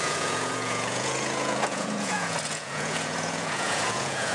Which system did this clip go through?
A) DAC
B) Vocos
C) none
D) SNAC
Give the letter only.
B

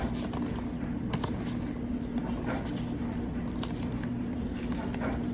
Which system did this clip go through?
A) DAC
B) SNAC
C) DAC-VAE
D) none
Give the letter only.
D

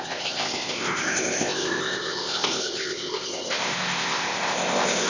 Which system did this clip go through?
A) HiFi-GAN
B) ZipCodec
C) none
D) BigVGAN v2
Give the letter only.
B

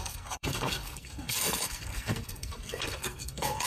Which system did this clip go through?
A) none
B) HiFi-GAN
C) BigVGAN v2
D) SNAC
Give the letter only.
D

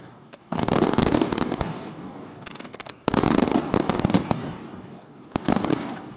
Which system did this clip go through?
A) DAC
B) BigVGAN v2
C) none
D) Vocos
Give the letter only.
A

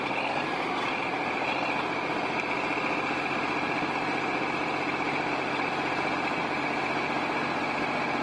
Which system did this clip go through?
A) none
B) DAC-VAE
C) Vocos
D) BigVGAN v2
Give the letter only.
A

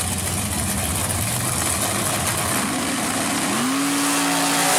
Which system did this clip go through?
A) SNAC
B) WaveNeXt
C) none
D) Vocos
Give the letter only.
C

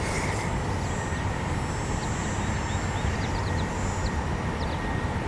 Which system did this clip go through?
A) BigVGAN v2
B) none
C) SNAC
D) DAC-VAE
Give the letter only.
B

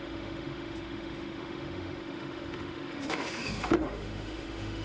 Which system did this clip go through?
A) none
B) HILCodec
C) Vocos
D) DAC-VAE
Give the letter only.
D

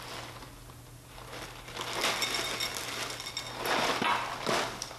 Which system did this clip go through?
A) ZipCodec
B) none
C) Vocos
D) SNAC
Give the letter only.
B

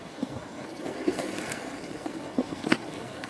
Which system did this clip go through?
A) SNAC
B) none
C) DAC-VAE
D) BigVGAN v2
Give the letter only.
A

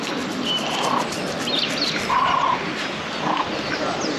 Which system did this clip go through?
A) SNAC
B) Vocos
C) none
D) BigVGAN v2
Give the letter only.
C